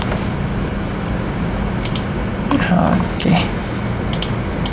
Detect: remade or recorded recorded